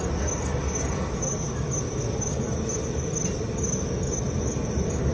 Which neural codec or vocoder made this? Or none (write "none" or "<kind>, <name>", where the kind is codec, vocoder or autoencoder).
none